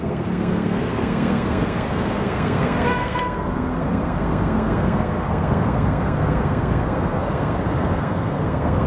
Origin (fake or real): fake